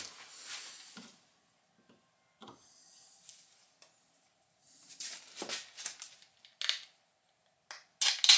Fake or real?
real